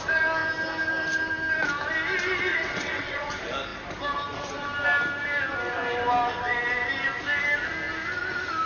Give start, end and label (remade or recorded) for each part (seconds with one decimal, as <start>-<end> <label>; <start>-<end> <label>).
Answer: 0.0-2.5 recorded; 2.5-3.3 remade; 3.3-8.7 recorded